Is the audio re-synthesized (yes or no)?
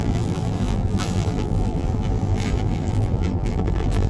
yes